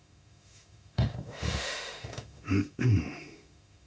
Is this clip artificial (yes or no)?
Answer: yes